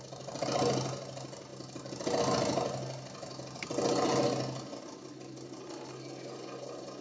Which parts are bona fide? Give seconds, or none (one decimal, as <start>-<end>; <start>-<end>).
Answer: 0.0-7.0